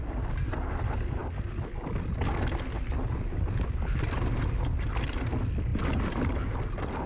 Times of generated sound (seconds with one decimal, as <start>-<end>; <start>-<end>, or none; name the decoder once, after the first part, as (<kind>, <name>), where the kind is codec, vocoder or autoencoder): none